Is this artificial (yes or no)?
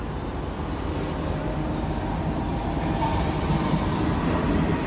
no